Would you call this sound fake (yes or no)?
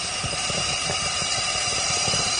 yes